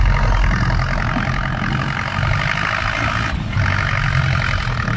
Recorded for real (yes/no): yes